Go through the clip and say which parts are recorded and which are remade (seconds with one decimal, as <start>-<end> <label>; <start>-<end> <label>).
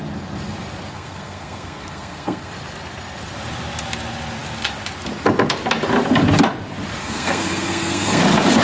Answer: 0.0-0.9 recorded; 0.9-2.5 remade; 2.5-7.0 recorded; 7.0-8.2 remade; 8.2-8.6 recorded